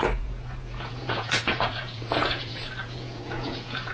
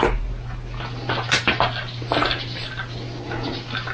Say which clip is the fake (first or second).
first